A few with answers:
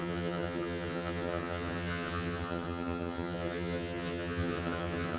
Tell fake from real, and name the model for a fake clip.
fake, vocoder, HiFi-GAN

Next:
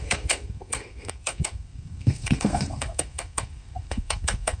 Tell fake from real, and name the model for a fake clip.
fake, codec, SNAC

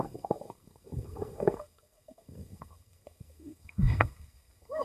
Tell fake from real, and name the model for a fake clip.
fake, codec, SNAC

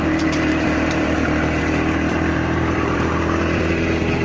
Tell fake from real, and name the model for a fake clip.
fake, vocoder, BigVGAN v2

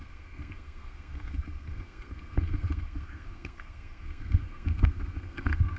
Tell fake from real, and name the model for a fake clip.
fake, codec, SNAC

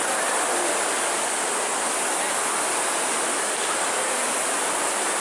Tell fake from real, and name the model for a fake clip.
real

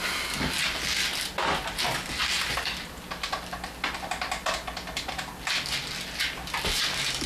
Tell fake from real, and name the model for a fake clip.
real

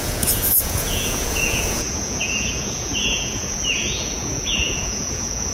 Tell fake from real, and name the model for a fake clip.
fake, vocoder, Vocos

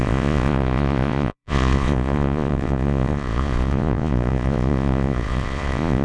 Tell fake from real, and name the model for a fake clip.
fake, vocoder, Vocos